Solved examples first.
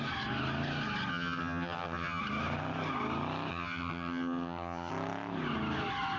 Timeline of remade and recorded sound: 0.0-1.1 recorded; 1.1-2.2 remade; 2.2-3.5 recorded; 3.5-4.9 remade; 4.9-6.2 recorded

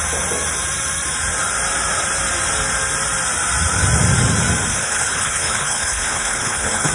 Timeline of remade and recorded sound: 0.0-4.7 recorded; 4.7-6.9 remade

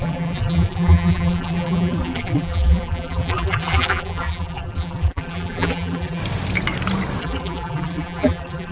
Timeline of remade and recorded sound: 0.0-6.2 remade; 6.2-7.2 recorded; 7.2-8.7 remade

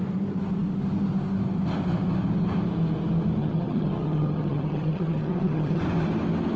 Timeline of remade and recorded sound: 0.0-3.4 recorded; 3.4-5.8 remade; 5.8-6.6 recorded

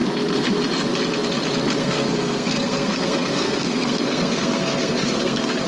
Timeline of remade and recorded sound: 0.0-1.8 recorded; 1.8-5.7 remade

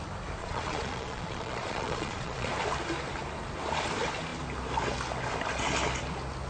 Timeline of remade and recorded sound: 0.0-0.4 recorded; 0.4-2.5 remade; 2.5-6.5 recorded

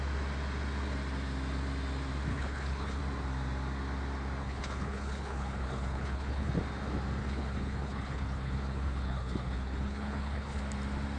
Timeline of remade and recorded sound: 0.0-2.3 recorded; 2.3-3.0 remade; 3.0-4.4 recorded; 4.4-6.5 remade; 6.5-7.2 recorded; 7.2-10.6 remade; 10.6-11.2 recorded

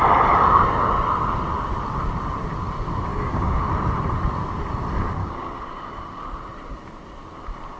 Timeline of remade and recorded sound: 0.0-3.1 recorded; 3.1-3.6 remade; 3.6-5.2 recorded; 5.2-6.2 remade; 6.2-7.8 recorded